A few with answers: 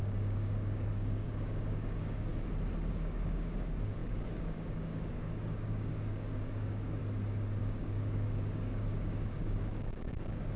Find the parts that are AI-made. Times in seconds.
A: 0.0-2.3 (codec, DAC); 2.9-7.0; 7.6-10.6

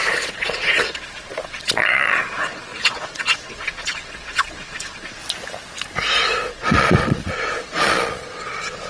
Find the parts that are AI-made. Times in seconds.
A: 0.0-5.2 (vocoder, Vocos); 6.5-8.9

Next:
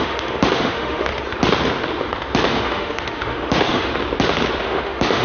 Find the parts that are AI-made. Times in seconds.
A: 0.0-1.1 (autoencoder, DAC-VAE); 2.5-3.9; 4.6-5.2

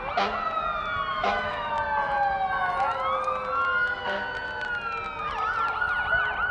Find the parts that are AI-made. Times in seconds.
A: 1.1-1.7 (autoencoder, DAC-VAE)

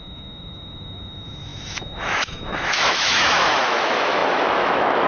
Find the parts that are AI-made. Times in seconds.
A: 0.0-5.1 (autoencoder, DAC-VAE)

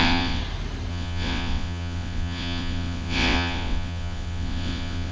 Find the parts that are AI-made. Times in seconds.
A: 0.0-0.4 (vocoder, WaveNeXt); 0.9-5.1